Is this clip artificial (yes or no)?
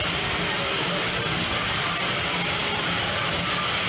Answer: no